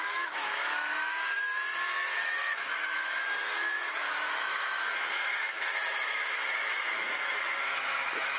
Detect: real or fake fake